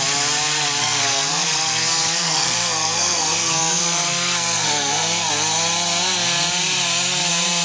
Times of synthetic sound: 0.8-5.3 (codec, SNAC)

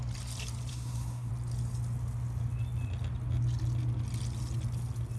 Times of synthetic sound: 0.7-1.3 (codec, SNAC)

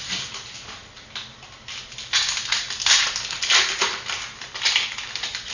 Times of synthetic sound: none

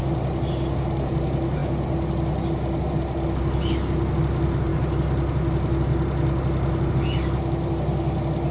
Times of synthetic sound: none

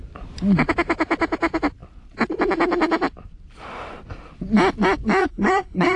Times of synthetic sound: 5.2-6.0 (codec, SNAC)

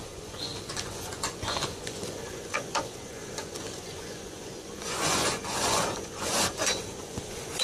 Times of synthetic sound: 0.0-7.6 (vocoder, Vocos)

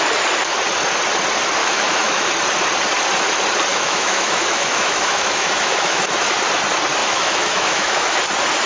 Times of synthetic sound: 1.6-2.3 (autoencoder, DAC-VAE); 3.7-6.0; 7.0-8.2